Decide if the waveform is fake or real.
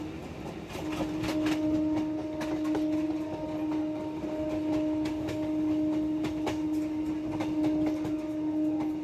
real